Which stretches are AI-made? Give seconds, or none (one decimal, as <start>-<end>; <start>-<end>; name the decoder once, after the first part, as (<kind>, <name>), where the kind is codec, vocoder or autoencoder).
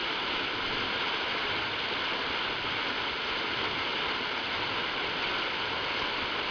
none